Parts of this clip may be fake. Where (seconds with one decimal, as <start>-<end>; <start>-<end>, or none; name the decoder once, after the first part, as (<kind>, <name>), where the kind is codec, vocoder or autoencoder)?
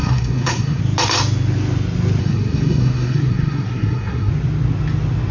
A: 0.0-0.8 (codec, SNAC); 2.2-4.3